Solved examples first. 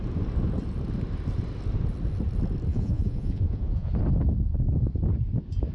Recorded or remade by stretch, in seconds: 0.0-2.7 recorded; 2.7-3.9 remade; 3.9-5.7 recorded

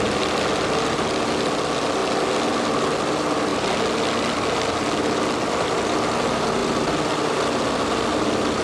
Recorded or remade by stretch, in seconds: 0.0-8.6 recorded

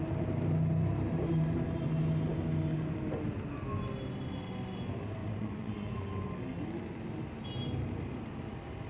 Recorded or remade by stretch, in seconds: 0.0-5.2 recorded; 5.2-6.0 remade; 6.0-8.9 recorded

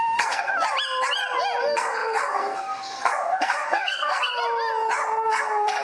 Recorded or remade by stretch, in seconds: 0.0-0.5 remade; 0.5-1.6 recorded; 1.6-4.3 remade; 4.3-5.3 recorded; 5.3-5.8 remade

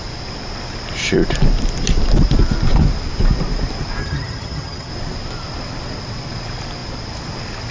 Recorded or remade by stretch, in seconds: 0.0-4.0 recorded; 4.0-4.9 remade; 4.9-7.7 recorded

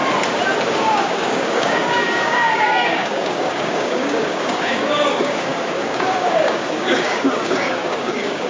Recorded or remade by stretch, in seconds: 0.0-0.7 recorded; 0.7-8.5 remade

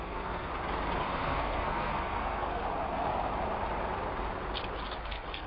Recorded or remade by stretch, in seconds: 0.0-0.5 remade; 0.5-1.0 recorded; 1.0-2.6 remade; 2.6-5.0 recorded; 5.0-5.5 remade

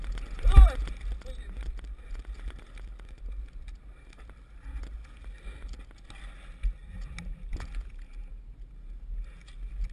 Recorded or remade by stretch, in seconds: 0.0-9.9 recorded